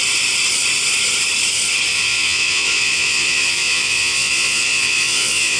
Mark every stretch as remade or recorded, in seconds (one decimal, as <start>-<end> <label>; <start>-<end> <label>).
0.0-1.9 recorded; 1.9-5.6 remade